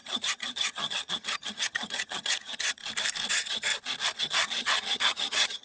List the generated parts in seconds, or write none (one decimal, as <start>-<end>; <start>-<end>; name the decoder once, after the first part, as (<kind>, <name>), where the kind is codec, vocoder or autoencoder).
0.0-2.8 (vocoder, HiFi-GAN); 3.3-3.7; 4.2-5.6